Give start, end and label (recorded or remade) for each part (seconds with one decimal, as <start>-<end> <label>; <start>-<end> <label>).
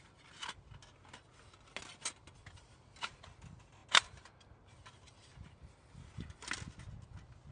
0.0-7.5 recorded